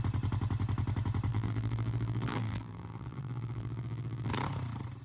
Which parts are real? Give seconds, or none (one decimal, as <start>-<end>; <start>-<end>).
0.0-1.3; 4.3-5.0